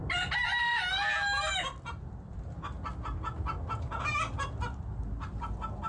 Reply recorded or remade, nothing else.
recorded